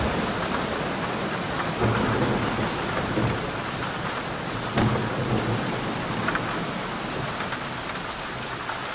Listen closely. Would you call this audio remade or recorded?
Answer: recorded